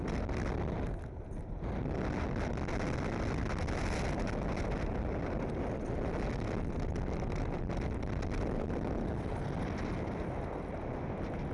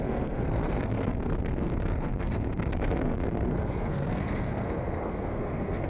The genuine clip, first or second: first